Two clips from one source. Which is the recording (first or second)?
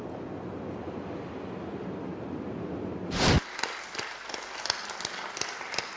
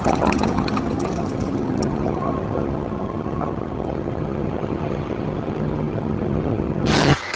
first